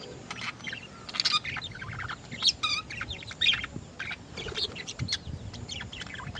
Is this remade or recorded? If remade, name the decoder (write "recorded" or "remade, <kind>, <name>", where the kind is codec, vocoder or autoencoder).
recorded